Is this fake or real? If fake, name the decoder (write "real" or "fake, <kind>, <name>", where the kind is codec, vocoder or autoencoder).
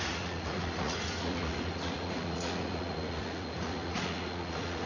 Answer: fake, vocoder, Vocos